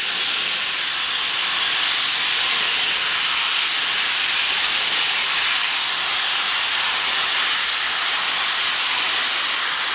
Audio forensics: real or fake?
real